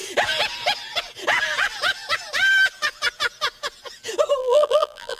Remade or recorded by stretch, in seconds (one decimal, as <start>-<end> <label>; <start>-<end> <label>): 0.0-4.4 recorded; 4.4-5.2 remade